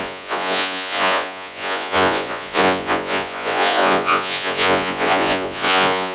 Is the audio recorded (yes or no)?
no